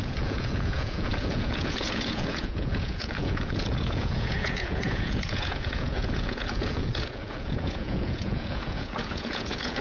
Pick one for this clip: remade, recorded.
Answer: remade